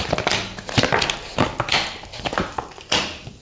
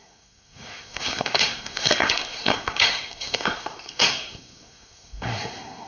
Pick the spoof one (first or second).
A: second